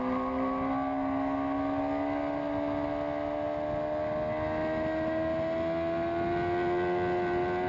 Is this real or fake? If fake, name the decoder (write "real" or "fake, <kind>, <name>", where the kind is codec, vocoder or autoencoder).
real